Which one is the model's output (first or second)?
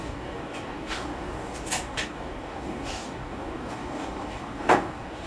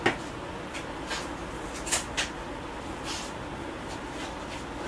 first